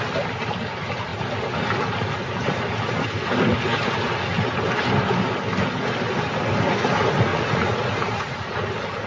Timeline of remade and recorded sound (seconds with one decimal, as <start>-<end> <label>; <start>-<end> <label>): 0.0-7.3 recorded; 7.3-8.7 remade; 8.7-9.1 recorded